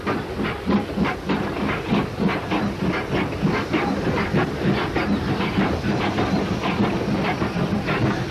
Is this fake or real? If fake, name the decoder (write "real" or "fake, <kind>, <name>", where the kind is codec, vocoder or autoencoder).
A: real